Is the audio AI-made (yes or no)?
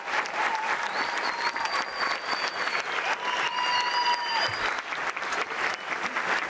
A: no